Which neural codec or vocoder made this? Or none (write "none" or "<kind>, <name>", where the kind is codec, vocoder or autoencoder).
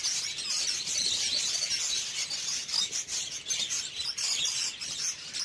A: none